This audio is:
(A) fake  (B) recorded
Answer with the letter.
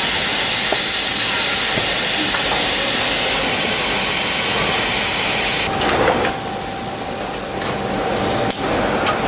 B